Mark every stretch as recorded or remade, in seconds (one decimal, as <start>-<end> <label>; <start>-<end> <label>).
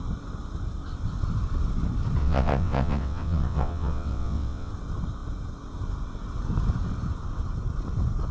0.0-2.2 recorded; 2.2-4.7 remade; 4.7-8.3 recorded